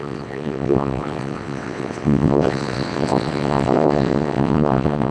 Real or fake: fake